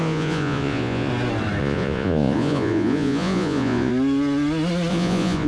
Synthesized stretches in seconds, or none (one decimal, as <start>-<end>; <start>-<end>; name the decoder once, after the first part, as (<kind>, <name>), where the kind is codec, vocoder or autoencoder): 0.0-1.1 (vocoder, Vocos); 1.6-3.9; 4.9-5.5